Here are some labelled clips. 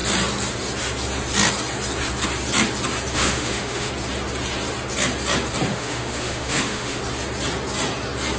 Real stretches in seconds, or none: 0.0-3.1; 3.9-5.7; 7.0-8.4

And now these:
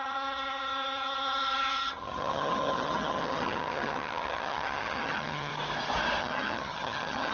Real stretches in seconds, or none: 5.5-6.2

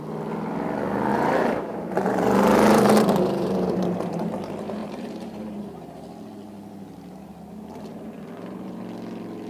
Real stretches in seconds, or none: 0.0-1.1; 3.7-4.8; 5.6-7.9; 8.8-9.5